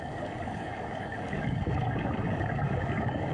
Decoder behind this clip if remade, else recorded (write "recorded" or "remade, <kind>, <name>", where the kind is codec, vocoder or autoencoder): remade, codec, DAC